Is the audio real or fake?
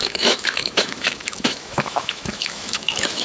fake